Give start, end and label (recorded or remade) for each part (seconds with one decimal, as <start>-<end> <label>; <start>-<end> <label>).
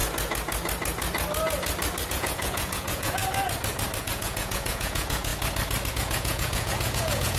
0.0-2.1 recorded; 2.1-3.2 remade; 3.2-4.0 recorded; 4.0-5.3 remade; 5.3-5.9 recorded; 5.9-7.4 remade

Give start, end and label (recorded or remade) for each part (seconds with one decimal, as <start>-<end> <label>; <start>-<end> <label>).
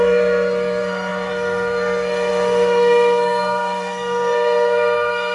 0.0-5.3 remade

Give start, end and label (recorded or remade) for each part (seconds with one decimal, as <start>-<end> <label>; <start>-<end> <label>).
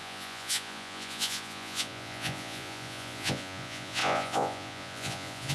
0.0-5.5 remade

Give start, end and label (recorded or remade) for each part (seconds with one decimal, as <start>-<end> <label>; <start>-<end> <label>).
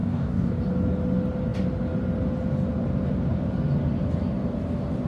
0.0-0.6 remade; 0.6-5.1 recorded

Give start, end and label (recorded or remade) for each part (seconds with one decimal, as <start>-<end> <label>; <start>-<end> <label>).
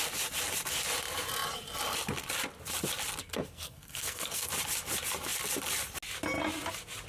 0.0-3.2 recorded; 3.2-4.5 remade; 4.5-7.1 recorded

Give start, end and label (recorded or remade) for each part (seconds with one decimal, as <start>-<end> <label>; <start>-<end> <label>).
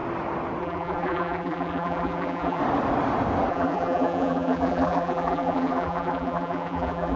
0.0-0.6 recorded; 0.6-2.6 remade; 2.6-3.5 recorded; 3.5-7.2 remade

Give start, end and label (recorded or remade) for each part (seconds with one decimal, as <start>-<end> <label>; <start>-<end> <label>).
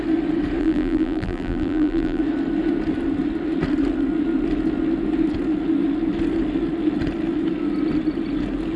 0.0-0.6 recorded; 0.6-2.2 remade; 2.2-8.8 recorded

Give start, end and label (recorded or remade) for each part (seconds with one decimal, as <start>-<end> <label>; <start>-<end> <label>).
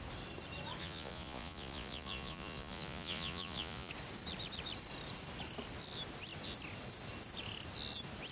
0.0-0.8 recorded; 0.8-3.9 remade; 3.9-8.3 recorded